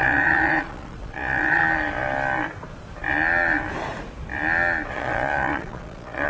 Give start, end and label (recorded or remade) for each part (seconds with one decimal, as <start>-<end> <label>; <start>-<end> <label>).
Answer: 0.0-1.6 remade; 1.6-4.9 recorded; 4.9-6.3 remade